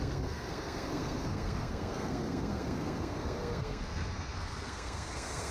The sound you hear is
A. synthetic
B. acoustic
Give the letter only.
A